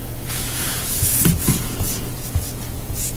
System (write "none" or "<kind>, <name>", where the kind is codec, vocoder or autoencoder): vocoder, Vocos